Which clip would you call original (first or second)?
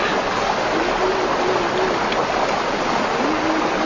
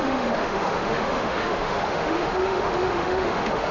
first